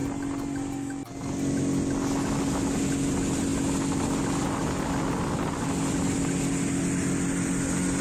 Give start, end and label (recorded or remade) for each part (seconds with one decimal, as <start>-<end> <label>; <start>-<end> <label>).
0.0-8.0 recorded